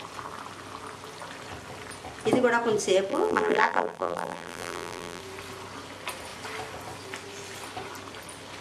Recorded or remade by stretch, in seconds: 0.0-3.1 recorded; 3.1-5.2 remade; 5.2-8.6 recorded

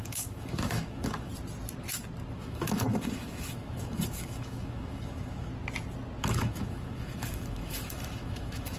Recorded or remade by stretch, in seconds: 0.0-1.3 remade; 1.3-2.4 recorded; 2.4-5.5 remade; 5.5-6.2 recorded; 6.2-8.8 remade

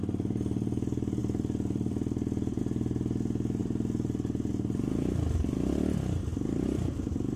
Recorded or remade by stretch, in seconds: 0.0-1.2 recorded; 1.2-2.6 remade; 2.6-3.6 recorded; 3.6-4.5 remade; 4.5-6.3 recorded; 6.3-7.0 remade; 7.0-7.4 recorded

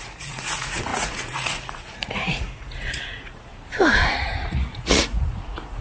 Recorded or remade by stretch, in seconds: 0.0-3.5 remade; 3.5-4.1 recorded; 4.1-5.8 remade

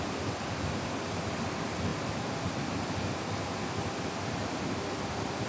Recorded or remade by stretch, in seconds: 0.0-5.5 recorded

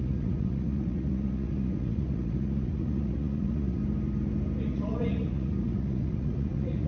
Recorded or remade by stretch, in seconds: 0.0-3.8 remade; 3.8-4.6 recorded; 4.6-6.9 remade